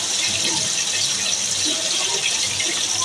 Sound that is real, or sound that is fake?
real